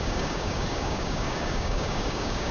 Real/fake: fake